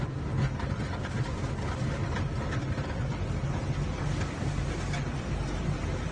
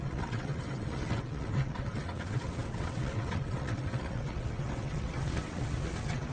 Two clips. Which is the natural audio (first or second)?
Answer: first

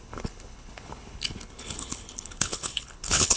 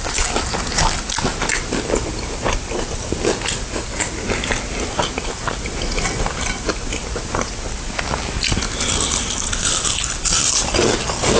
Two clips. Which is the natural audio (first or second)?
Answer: second